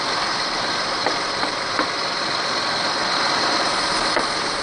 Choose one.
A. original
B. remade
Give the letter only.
A